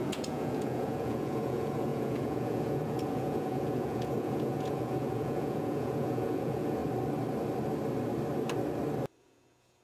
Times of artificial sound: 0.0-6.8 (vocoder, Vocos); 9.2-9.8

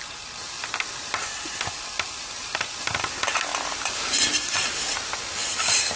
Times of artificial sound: none